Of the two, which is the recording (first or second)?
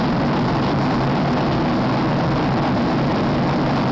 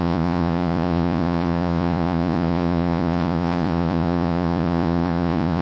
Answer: first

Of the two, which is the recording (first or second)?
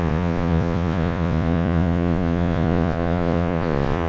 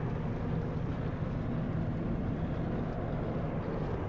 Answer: second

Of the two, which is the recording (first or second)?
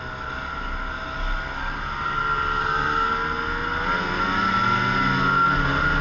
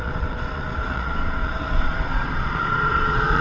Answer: first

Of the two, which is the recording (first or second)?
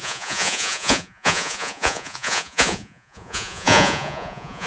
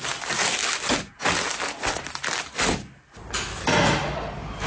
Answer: second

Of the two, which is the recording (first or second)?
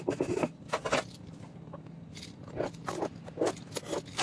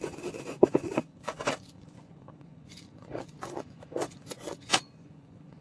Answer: first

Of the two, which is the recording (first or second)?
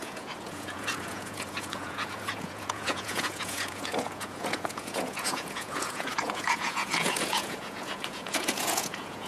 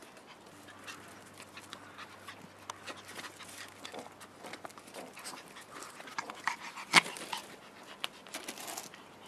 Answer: second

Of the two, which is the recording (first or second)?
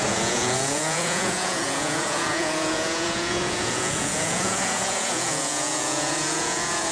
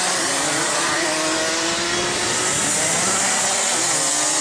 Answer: second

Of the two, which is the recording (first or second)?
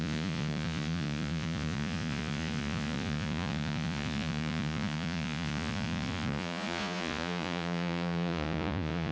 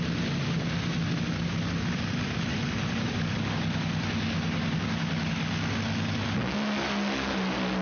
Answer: second